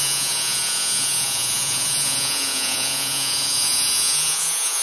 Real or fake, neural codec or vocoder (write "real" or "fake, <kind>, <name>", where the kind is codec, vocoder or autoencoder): fake, vocoder, Vocos